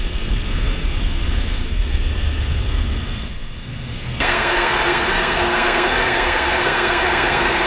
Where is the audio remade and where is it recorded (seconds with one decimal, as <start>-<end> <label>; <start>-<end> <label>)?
0.0-7.7 remade

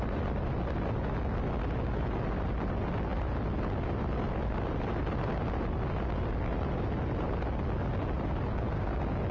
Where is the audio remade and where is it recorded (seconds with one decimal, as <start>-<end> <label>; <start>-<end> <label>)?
0.0-9.3 recorded

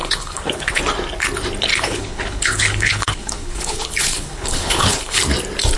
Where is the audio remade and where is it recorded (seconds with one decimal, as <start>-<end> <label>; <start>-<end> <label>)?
0.0-0.8 remade; 0.8-1.7 recorded; 1.7-5.2 remade; 5.2-5.8 recorded

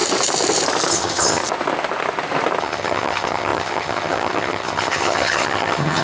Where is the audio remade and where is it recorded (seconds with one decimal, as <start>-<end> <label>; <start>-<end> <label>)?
0.0-0.9 recorded; 0.9-1.4 remade; 1.4-2.6 recorded; 2.6-6.0 remade

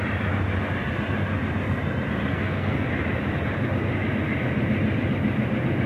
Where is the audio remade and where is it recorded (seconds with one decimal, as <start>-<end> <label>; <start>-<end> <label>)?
0.0-2.3 recorded; 2.3-2.9 remade; 2.9-5.9 recorded

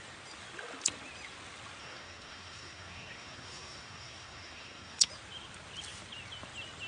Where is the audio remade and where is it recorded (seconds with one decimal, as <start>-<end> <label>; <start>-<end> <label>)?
0.0-1.8 recorded; 1.8-5.1 remade; 5.1-6.9 recorded

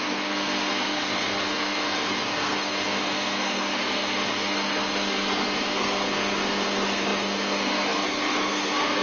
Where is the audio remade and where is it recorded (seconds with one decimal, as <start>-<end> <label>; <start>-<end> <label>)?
0.0-9.0 remade